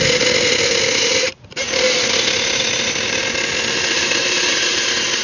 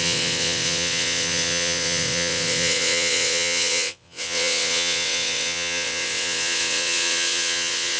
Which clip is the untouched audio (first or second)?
first